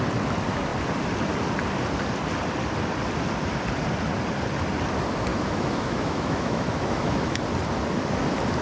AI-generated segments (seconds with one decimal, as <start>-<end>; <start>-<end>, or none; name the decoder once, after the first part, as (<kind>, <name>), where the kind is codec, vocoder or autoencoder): 5.3-7.4 (autoencoder, DAC-VAE)